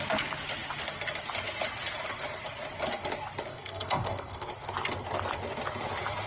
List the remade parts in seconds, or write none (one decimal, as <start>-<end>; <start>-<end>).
3.5-4.5